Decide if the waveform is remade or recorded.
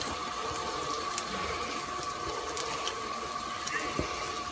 recorded